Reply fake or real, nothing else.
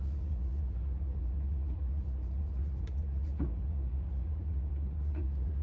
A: fake